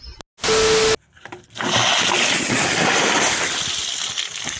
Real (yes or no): yes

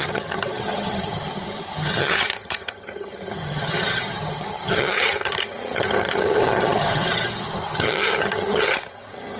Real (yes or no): no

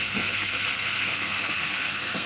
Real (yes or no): no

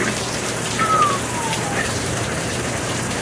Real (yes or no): no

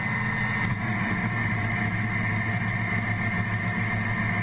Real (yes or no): yes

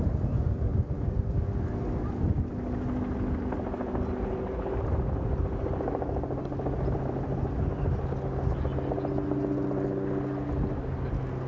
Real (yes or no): yes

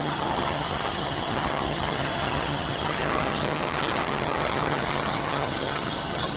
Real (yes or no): no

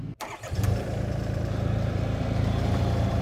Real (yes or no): no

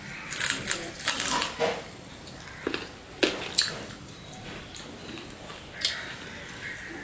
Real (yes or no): no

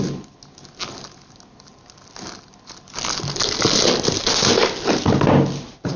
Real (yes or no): yes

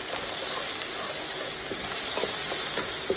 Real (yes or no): yes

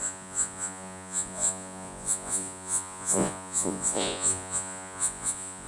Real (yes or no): no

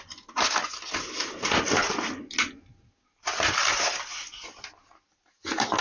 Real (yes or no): yes